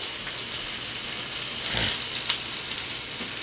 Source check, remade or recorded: recorded